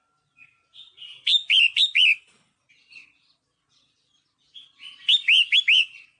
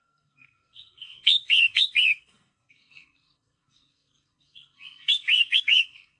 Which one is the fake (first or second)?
second